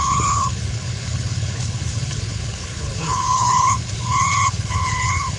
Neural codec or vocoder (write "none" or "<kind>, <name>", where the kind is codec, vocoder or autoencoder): codec, HILCodec